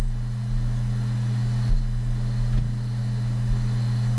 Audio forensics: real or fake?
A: real